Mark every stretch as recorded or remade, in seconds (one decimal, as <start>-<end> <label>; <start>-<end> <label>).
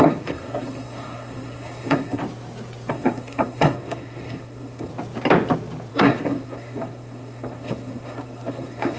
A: 0.0-2.2 remade; 2.2-2.9 recorded; 2.9-4.9 remade; 4.9-5.9 recorded; 5.9-9.0 remade